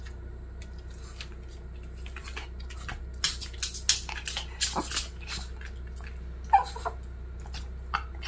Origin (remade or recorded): recorded